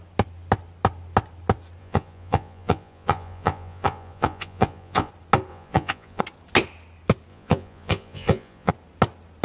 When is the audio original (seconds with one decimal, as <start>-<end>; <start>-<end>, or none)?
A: 0.0-1.8; 5.1-5.5; 6.2-7.3; 8.7-9.4